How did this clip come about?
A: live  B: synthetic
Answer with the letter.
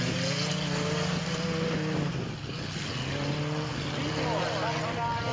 A